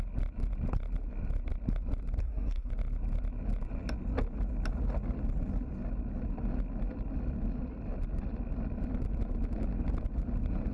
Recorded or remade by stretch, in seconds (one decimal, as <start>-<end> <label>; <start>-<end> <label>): 0.0-2.2 recorded; 2.2-2.7 remade; 2.7-10.7 recorded